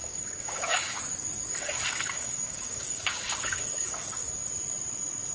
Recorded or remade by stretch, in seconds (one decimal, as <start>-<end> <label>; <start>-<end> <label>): 0.0-1.0 remade; 1.0-1.5 recorded; 1.5-4.3 remade; 4.3-5.3 recorded